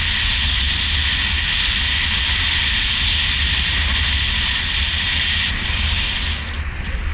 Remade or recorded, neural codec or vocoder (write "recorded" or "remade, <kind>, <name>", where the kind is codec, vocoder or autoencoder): recorded